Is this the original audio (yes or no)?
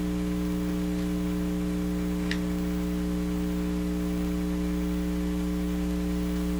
yes